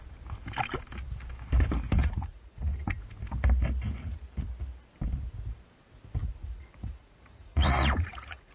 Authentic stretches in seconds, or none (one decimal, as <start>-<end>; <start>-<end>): 0.0-2.0; 3.0-6.2